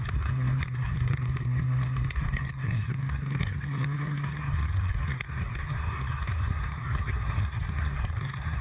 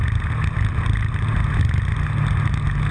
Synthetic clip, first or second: first